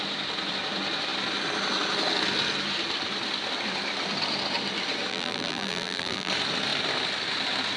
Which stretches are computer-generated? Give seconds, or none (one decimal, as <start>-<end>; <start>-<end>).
5.1-6.3